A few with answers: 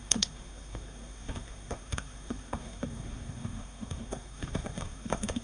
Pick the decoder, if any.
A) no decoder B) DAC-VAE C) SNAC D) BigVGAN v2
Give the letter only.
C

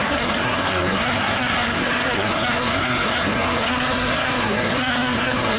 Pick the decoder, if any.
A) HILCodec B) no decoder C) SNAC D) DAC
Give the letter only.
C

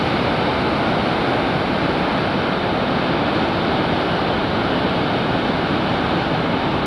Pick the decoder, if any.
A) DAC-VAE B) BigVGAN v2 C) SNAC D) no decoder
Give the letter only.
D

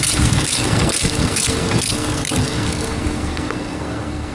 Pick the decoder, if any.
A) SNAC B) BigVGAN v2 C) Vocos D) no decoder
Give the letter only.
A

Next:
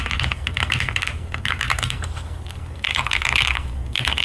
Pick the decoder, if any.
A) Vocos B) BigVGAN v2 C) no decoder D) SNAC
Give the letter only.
D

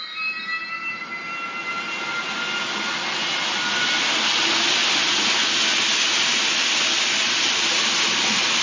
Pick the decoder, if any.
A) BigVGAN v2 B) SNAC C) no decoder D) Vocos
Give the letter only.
C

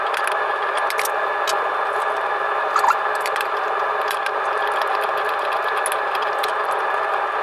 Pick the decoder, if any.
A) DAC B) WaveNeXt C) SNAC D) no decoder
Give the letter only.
D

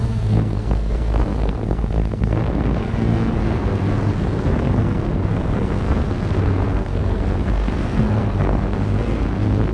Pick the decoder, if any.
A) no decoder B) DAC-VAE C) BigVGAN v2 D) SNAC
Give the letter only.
D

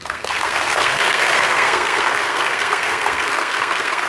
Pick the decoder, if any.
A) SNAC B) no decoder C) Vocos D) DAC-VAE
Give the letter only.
A